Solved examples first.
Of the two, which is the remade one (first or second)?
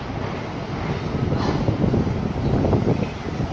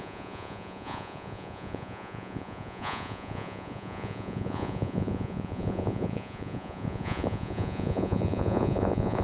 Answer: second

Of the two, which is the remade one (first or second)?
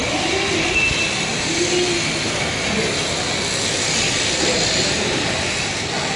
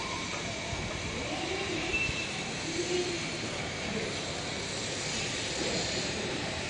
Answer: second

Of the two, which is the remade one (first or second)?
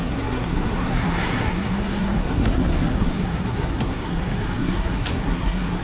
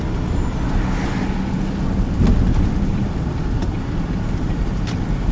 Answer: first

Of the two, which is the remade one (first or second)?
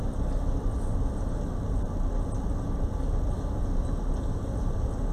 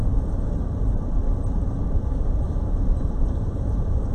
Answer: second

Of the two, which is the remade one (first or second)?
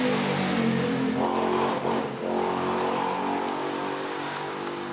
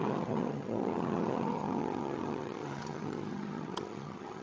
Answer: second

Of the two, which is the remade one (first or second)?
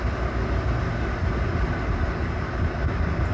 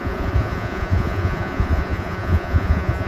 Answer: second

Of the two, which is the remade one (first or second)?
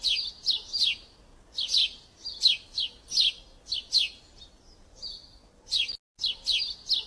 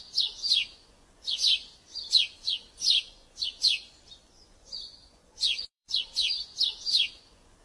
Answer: second